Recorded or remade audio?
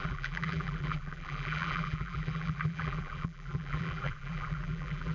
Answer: remade